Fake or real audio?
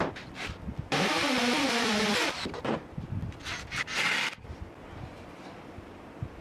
fake